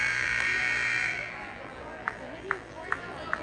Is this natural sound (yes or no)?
no